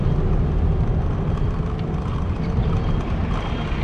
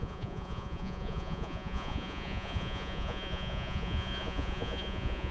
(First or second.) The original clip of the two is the first